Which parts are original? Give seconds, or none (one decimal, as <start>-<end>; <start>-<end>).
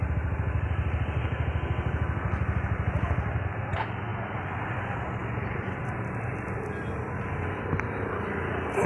0.0-4.1; 4.8-5.2; 6.3-8.9